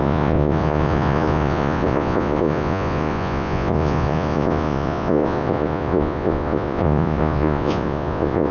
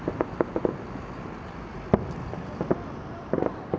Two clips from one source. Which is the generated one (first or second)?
first